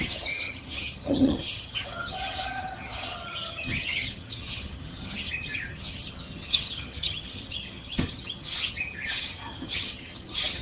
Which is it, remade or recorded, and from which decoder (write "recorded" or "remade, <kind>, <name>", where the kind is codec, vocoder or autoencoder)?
remade, vocoder, HiFi-GAN